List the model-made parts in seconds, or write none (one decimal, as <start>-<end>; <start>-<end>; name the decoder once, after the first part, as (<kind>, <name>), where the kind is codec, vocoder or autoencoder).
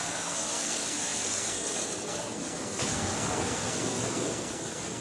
0.0-5.0 (codec, SNAC)